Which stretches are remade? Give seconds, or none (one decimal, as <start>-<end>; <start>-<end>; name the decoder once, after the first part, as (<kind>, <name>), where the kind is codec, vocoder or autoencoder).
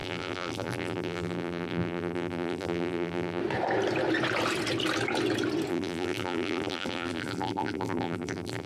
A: 0.0-3.4 (vocoder, BigVGAN v2); 5.7-8.7